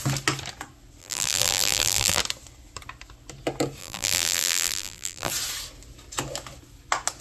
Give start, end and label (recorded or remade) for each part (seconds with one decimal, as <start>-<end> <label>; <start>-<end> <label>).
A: 0.0-1.0 recorded; 1.0-2.2 remade; 2.2-3.8 recorded; 3.8-5.3 remade; 5.3-7.2 recorded